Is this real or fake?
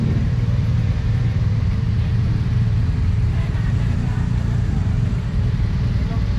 fake